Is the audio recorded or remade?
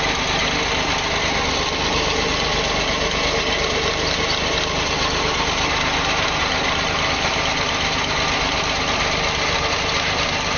recorded